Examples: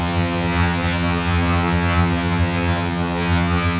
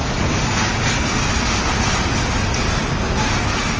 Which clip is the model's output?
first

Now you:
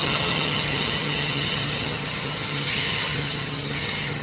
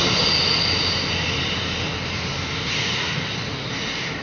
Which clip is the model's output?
first